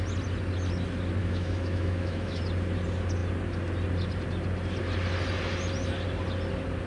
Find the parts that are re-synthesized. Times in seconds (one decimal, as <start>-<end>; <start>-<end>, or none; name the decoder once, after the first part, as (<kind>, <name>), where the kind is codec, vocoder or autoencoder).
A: 1.2-2.4 (autoencoder, DAC-VAE)